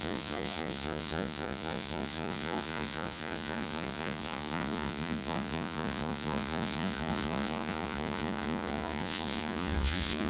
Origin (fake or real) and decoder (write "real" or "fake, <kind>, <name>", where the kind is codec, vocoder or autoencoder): fake, vocoder, Vocos